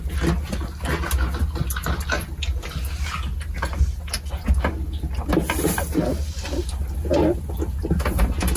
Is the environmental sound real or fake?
real